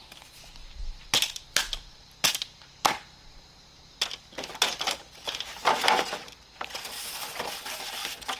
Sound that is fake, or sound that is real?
real